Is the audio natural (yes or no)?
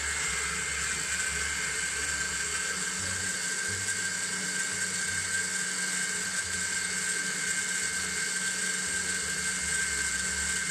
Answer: yes